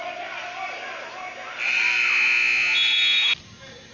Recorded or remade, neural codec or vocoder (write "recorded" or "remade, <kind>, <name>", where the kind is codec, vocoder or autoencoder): recorded